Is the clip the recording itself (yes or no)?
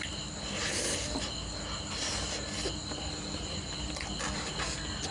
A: yes